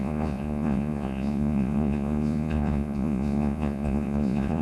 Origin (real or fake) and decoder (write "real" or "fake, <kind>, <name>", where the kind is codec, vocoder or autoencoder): fake, vocoder, Vocos